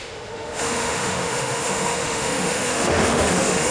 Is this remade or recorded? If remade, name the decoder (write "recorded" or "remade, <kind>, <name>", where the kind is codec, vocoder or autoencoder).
remade, autoencoder, DAC-VAE